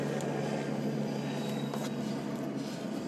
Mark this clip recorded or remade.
recorded